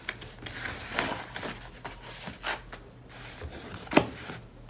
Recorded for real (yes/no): yes